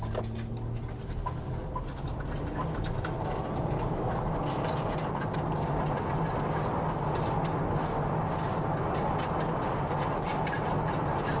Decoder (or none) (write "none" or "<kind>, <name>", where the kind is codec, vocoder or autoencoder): none